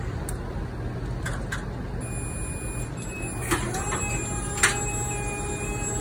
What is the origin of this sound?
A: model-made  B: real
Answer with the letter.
B